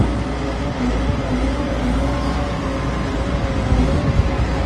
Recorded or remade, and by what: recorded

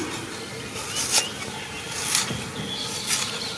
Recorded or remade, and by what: recorded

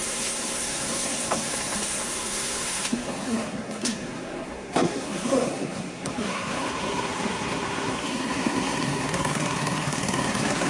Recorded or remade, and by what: remade, codec, SNAC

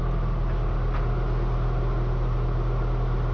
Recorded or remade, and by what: recorded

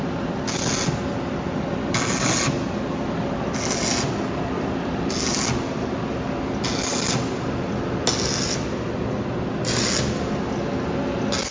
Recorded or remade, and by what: recorded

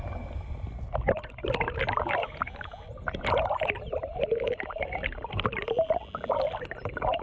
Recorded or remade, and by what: recorded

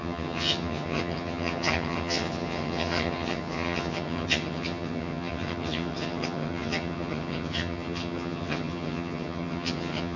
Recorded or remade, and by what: remade, vocoder, HiFi-GAN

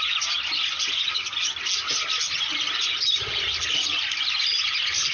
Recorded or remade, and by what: recorded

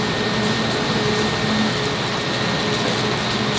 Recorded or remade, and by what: recorded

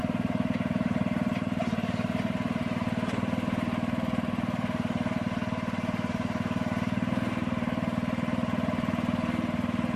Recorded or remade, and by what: recorded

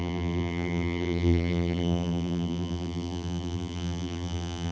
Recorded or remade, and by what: remade, vocoder, BigVGAN v2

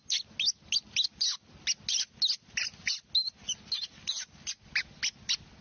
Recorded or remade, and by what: recorded